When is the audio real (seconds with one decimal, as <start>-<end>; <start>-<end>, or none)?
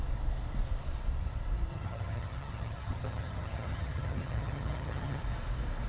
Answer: 0.0-1.7; 5.2-5.9